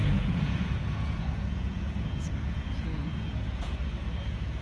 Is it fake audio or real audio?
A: fake